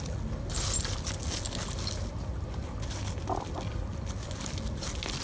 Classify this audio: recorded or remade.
recorded